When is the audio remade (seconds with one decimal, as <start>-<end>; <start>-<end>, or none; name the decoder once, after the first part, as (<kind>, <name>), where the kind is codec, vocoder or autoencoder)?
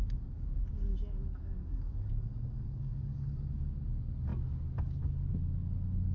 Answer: 1.3-3.7 (codec, DAC)